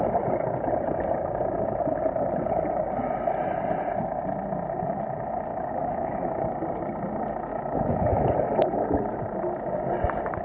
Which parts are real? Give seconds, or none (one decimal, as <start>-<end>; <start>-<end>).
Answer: 0.0-5.5; 6.4-7.5; 8.2-10.4